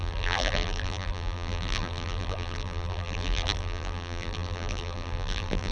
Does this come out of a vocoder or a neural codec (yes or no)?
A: yes